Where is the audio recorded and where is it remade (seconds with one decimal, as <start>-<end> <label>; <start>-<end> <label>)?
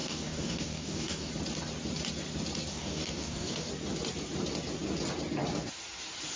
0.0-1.3 remade; 1.3-2.7 recorded; 2.7-3.7 remade; 3.7-6.4 recorded